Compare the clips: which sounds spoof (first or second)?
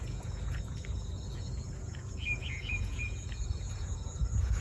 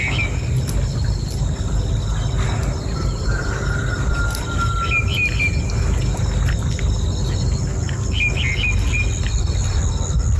first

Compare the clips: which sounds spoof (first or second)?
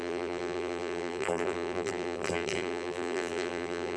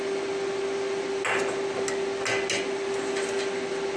first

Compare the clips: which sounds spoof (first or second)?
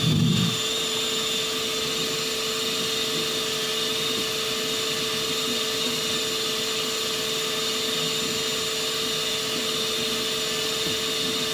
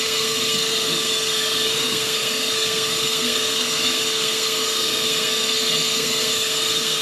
second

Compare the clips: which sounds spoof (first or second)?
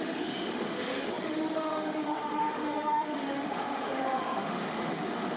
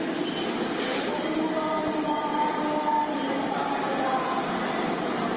first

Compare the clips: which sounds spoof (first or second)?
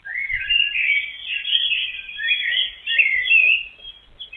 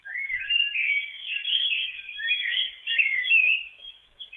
second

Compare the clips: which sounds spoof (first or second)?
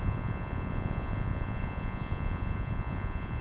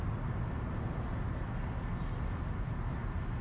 first